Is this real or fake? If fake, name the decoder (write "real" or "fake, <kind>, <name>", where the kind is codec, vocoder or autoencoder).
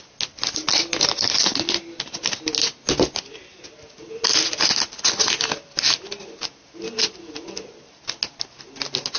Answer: real